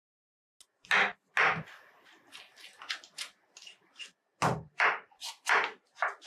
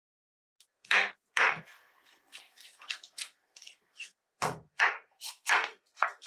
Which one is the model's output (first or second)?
second